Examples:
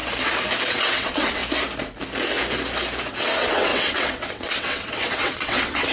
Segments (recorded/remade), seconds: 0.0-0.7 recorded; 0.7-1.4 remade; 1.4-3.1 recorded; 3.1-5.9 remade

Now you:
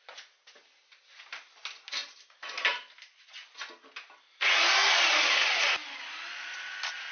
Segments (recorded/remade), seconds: 0.0-7.1 recorded

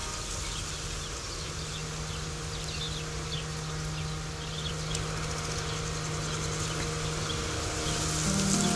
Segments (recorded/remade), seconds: 0.0-8.8 recorded